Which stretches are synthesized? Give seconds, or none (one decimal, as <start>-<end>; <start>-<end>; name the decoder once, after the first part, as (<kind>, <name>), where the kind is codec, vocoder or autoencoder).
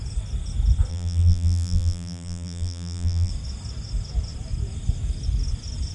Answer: 0.9-3.3 (vocoder, BigVGAN v2)